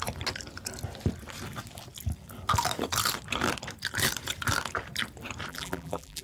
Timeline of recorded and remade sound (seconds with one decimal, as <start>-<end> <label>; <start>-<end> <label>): 0.0-5.5 recorded; 5.5-6.2 remade